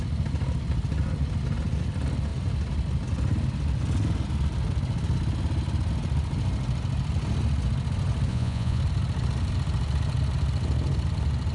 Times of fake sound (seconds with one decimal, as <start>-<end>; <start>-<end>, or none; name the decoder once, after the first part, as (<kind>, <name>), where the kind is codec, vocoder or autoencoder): 8.3-8.8 (vocoder, Vocos)